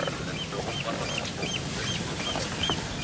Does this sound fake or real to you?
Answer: real